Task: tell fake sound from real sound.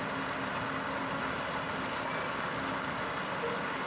real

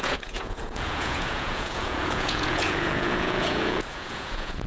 fake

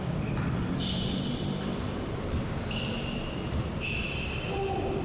fake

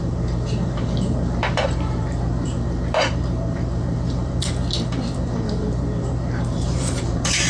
fake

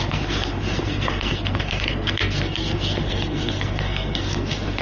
fake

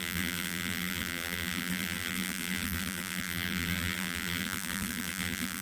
fake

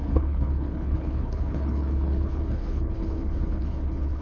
fake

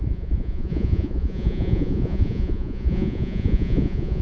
fake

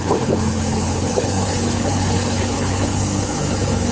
fake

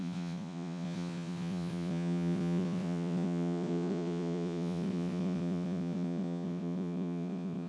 fake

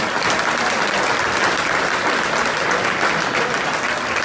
real